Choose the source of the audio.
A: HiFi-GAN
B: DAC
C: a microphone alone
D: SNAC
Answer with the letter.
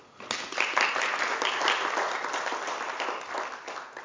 C